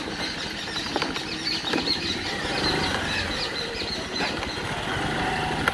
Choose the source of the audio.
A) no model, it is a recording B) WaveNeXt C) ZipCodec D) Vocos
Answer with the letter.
A